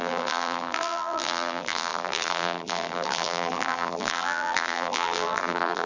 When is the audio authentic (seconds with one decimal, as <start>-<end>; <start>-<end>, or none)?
none